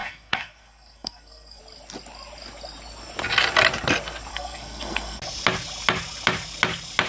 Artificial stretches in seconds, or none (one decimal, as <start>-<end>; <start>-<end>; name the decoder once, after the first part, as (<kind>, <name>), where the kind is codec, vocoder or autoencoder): 0.0-1.6 (codec, SNAC); 4.3-5.2

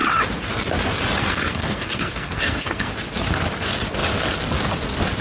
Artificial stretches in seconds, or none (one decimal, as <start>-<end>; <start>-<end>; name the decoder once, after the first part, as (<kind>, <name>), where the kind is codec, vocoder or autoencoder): 1.2-2.9 (codec, SNAC)

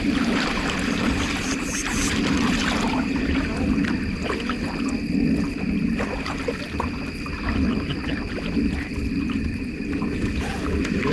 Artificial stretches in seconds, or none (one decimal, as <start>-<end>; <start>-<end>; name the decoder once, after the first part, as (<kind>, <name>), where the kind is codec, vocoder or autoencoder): none

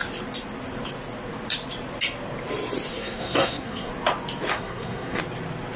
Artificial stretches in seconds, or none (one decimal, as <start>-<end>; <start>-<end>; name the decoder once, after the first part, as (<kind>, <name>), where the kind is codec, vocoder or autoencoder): 2.9-3.9 (codec, SNAC); 4.5-5.2